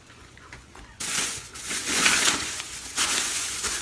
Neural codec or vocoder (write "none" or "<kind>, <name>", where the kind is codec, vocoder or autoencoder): vocoder, Vocos